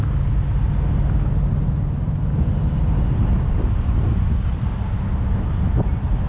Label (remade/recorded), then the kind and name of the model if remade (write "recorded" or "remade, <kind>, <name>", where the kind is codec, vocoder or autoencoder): recorded